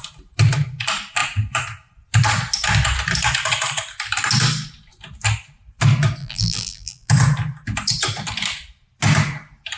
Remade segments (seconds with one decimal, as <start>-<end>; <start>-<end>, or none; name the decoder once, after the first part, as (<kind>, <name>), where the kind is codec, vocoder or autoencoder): 6.2-7.1 (vocoder, BigVGAN v2)

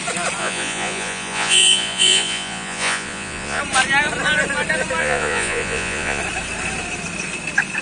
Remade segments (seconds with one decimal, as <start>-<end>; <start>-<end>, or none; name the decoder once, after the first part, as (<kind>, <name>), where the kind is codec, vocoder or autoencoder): 0.4-3.6 (vocoder, Vocos); 5.0-6.2

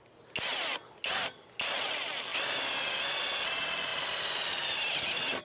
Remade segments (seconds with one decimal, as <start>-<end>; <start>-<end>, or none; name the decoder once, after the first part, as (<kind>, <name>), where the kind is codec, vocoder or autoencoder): none

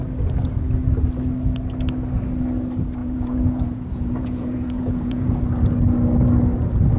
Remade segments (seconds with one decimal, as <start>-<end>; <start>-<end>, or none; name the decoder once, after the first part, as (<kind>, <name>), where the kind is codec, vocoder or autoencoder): 3.0-5.4 (vocoder, Vocos)

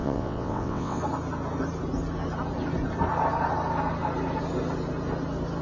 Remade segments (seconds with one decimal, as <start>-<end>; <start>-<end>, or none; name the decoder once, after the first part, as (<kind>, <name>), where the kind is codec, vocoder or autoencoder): 0.0-1.0 (vocoder, WaveNeXt)

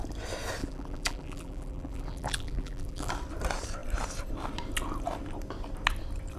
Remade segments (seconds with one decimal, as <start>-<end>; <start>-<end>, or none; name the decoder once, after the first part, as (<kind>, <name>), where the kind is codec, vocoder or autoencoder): 0.6-3.1 (vocoder, BigVGAN v2)